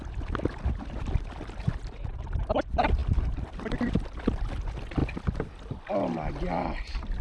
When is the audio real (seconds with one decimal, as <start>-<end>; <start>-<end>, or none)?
0.0-7.2

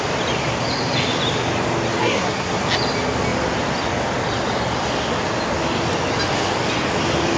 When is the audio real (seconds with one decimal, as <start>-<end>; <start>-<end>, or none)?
0.0-2.0; 2.6-7.4

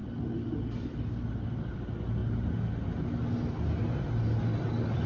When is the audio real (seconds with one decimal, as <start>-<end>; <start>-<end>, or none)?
0.0-5.1

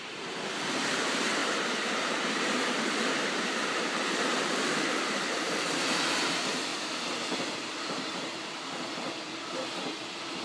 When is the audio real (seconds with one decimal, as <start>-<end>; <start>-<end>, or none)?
0.0-1.4; 5.8-6.7; 9.1-10.4

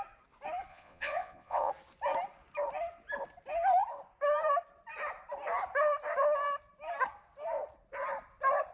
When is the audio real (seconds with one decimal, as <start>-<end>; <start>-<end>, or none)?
0.0-0.7; 1.7-8.7

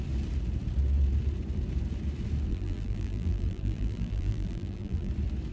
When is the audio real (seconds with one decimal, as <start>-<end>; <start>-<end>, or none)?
0.0-2.5; 5.1-5.5

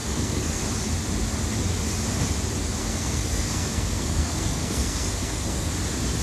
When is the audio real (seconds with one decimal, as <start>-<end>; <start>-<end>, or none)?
0.6-2.8; 5.8-6.2

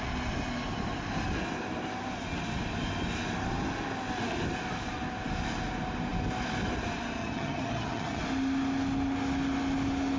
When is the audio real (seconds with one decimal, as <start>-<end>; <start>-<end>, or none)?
0.0-7.2; 8.2-10.2